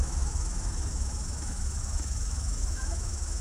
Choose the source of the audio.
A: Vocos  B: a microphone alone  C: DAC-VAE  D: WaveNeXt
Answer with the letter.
C